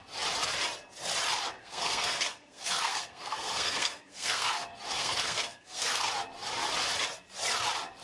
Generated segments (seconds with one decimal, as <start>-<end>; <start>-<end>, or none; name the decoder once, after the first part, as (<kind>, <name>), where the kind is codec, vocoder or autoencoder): 1.6-4.6 (codec, SNAC); 5.0-6.1

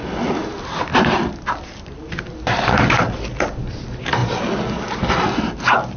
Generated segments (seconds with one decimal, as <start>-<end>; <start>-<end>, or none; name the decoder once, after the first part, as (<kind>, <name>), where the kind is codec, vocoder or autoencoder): 0.0-3.6 (vocoder, BigVGAN v2)

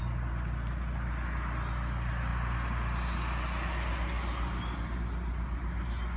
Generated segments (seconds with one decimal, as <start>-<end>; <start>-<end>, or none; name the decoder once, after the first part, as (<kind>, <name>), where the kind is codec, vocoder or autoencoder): none

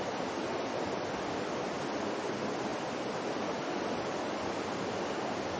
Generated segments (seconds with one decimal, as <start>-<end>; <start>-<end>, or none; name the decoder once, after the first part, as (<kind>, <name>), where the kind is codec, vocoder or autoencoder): none

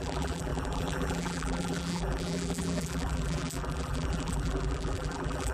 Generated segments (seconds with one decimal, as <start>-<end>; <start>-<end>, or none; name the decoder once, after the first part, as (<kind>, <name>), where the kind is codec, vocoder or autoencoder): 0.0-5.5 (vocoder, BigVGAN v2)

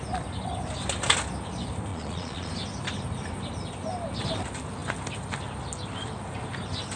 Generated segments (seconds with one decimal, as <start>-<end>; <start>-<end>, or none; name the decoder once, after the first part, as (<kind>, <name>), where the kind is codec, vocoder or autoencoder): 1.9-2.5 (vocoder, Vocos)

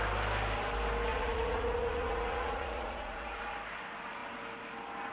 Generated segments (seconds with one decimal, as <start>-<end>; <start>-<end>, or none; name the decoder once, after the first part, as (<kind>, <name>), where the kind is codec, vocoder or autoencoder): 1.1-3.5 (vocoder, Vocos)

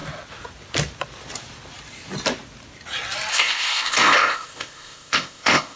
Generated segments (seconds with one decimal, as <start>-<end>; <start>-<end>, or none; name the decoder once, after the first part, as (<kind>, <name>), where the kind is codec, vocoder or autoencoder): 3.3-5.8 (codec, ZipCodec)